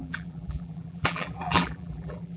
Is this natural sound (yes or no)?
no